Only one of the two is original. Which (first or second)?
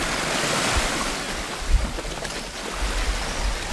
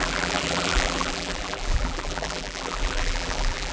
first